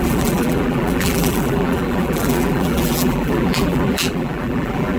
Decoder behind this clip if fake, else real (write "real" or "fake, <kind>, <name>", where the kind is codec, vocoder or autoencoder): fake, vocoder, BigVGAN v2